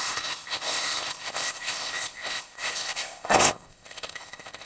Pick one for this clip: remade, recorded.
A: remade